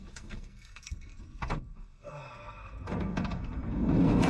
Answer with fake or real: fake